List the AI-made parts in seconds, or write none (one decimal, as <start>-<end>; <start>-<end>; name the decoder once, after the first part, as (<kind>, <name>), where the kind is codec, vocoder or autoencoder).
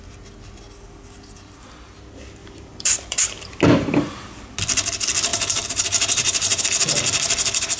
2.4-3.6 (vocoder, BigVGAN v2); 5.3-6.6